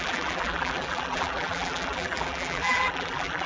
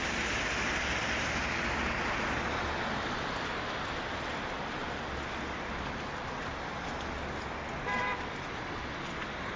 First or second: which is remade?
first